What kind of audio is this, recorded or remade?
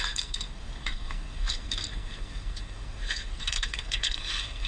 remade